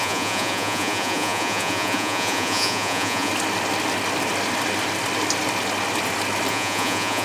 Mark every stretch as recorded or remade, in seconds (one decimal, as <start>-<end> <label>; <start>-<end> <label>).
0.0-3.3 remade; 3.3-6.5 recorded; 6.5-7.2 remade